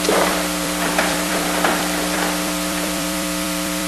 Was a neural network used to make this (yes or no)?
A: yes